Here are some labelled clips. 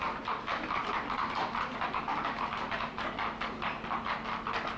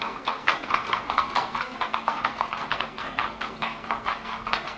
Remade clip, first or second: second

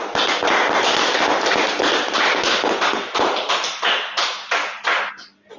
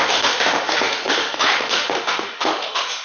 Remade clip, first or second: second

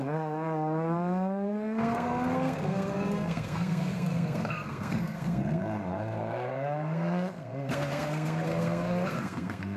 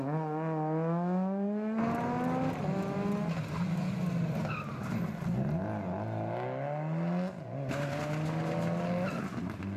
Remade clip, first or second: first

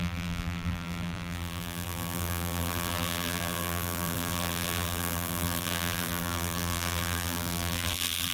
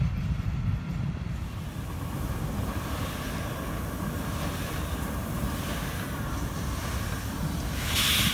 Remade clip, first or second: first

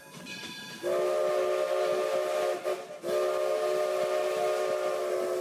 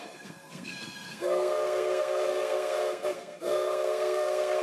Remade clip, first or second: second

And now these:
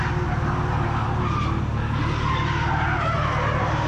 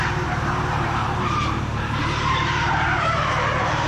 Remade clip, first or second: second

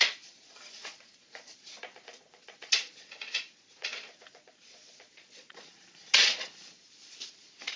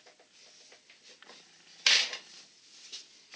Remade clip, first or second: first